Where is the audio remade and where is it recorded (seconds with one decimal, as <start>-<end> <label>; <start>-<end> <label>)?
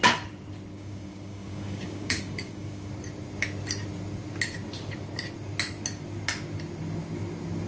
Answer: 0.0-0.7 recorded; 0.7-2.9 remade; 2.9-7.7 recorded